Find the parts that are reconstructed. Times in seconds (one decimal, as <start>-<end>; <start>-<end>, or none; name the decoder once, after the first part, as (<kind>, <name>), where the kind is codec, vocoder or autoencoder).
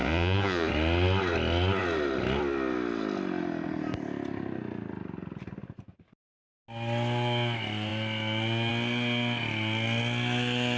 0.0-0.7 (vocoder, Vocos)